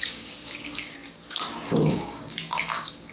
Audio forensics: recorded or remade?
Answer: remade